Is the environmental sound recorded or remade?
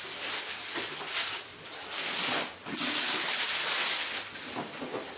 recorded